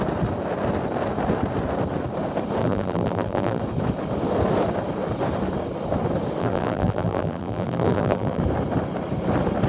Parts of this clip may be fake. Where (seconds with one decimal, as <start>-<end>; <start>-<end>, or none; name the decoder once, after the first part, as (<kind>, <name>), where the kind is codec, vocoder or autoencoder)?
2.6-3.6 (vocoder, BigVGAN v2); 6.4-8.4